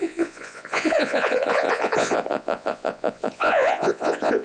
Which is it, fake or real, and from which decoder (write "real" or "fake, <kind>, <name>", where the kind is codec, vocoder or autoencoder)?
fake, vocoder, Vocos